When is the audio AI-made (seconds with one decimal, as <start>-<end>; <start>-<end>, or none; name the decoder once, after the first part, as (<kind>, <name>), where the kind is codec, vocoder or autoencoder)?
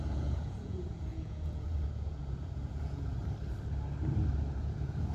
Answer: 0.0-3.2 (vocoder, Vocos); 4.6-5.1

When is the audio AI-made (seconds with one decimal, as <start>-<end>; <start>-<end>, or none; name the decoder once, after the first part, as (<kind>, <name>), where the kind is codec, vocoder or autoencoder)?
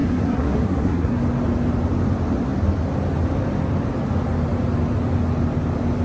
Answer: 0.0-1.2 (codec, SNAC)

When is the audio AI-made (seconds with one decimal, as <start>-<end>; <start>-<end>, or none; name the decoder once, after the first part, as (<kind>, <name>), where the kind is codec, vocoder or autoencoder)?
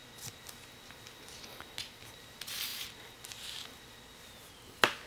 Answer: none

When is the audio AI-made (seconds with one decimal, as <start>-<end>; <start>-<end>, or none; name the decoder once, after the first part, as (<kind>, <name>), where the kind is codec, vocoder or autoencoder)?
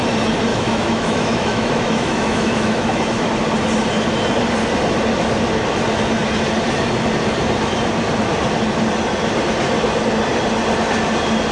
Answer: 0.5-3.3 (autoencoder, DAC-VAE)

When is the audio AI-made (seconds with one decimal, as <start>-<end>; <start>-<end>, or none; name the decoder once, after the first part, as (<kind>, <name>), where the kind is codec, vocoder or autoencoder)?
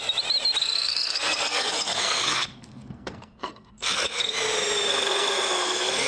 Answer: 0.6-4.3 (codec, SNAC); 4.9-6.1